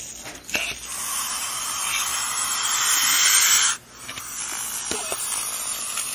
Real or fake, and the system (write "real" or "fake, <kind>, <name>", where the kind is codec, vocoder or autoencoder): real